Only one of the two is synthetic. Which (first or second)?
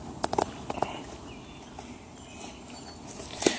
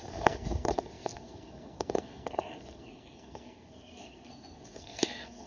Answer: second